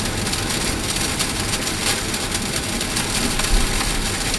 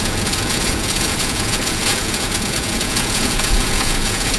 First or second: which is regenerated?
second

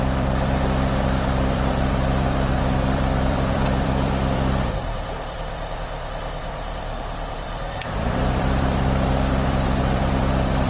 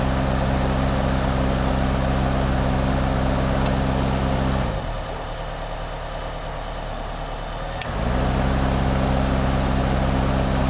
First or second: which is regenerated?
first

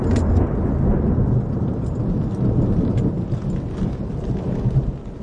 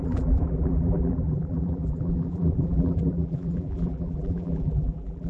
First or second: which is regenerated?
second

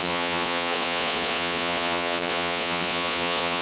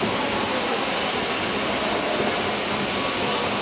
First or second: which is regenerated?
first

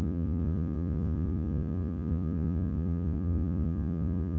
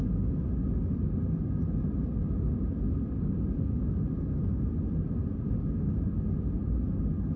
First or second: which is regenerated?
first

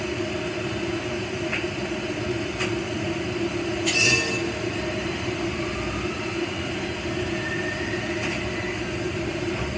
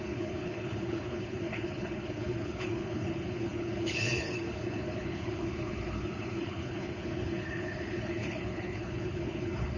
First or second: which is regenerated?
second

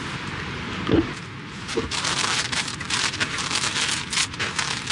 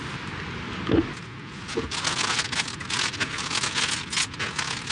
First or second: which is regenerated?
first